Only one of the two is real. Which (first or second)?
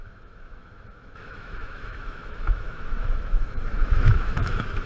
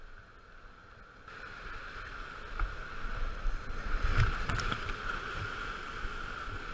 second